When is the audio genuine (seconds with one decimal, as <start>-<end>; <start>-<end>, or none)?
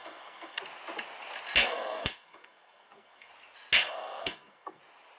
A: 0.6-1.6; 3.3-3.8; 4.8-5.2